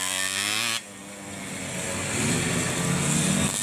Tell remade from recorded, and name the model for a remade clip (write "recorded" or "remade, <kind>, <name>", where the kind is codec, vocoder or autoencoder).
recorded